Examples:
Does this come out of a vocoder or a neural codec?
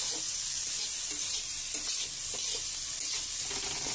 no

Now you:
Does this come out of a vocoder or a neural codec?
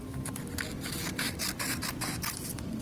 no